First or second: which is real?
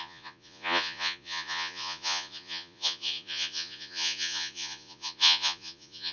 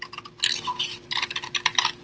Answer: second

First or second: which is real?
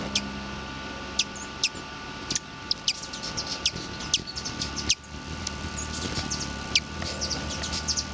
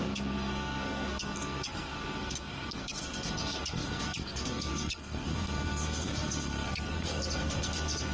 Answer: first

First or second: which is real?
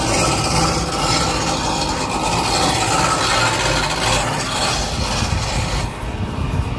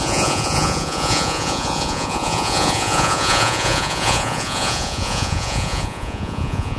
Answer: first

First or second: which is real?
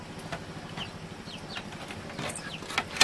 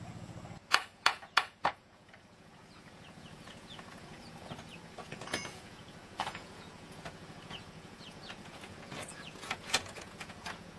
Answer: first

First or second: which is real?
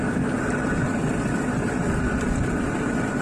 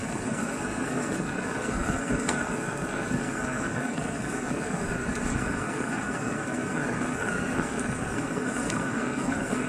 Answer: first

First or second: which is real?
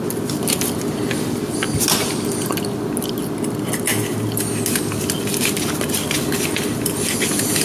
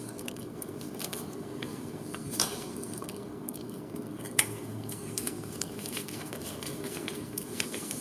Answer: first